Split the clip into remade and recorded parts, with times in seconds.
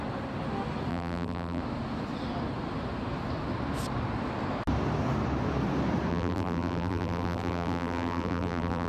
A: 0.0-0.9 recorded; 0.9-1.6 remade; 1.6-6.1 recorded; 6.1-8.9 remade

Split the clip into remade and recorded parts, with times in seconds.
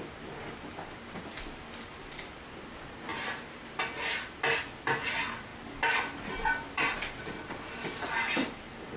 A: 0.0-9.0 recorded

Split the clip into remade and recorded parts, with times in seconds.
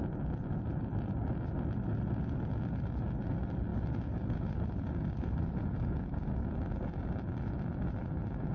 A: 0.0-8.5 recorded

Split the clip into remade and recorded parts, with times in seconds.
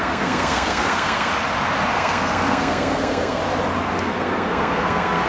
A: 0.0-1.3 remade; 1.3-1.9 recorded; 1.9-3.4 remade; 3.4-4.0 recorded; 4.0-5.3 remade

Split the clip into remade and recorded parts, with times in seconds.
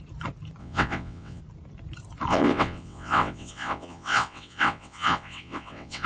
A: 0.0-0.6 recorded; 0.6-1.4 remade; 1.4-2.3 recorded; 2.3-6.1 remade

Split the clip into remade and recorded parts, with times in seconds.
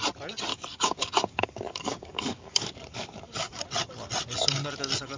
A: 0.0-0.5 recorded; 0.5-3.6 remade; 3.6-5.2 recorded